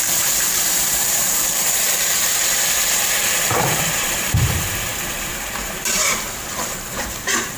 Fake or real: fake